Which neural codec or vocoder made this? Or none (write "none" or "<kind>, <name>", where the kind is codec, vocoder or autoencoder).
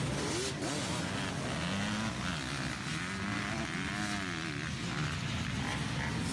none